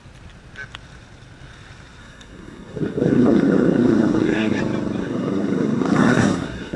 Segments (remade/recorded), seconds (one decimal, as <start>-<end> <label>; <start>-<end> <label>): 0.0-2.0 recorded; 2.0-4.6 remade; 4.6-5.0 recorded; 5.0-6.8 remade